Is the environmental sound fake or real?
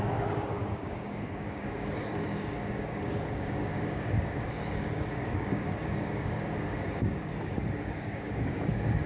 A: fake